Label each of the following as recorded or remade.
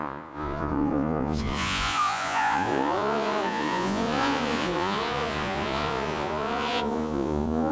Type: remade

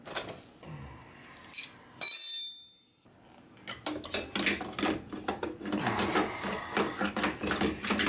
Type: recorded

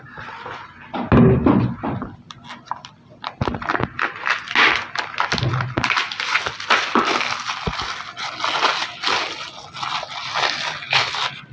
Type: recorded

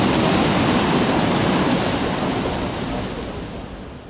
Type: recorded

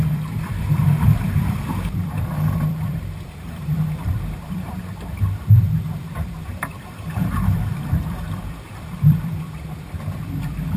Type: remade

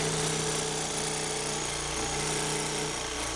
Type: recorded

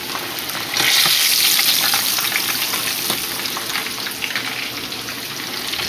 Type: recorded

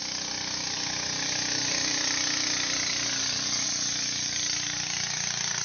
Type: recorded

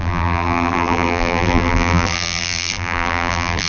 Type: remade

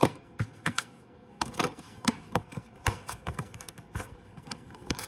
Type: remade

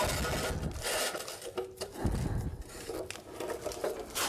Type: recorded